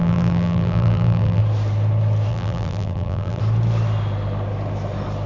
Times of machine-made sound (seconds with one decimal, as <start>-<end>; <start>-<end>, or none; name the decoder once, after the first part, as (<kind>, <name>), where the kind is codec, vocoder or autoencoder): 0.0-1.4 (vocoder, BigVGAN v2); 2.3-3.4